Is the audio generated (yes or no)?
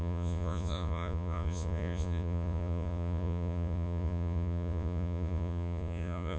yes